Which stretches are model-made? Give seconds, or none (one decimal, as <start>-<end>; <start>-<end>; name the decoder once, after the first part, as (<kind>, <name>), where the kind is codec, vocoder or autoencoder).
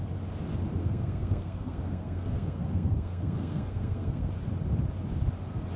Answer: 0.8-4.3 (codec, SNAC)